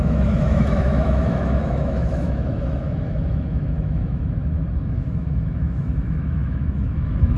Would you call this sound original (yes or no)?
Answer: no